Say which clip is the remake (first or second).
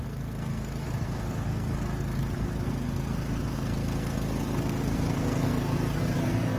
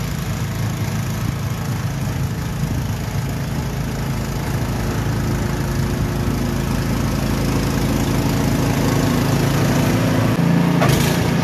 first